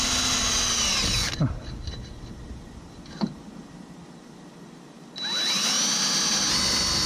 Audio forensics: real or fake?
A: real